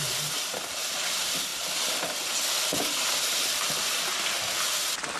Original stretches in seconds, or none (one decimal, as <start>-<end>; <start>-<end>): 0.0-5.2